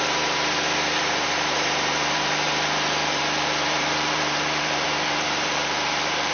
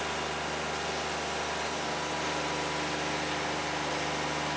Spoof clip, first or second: first